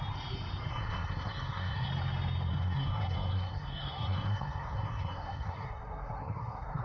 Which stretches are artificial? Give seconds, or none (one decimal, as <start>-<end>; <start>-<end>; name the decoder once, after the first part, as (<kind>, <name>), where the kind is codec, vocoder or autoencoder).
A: 0.7-1.9 (codec, SNAC); 2.5-6.8